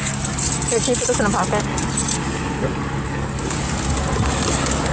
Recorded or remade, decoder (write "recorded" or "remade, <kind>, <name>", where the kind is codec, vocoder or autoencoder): recorded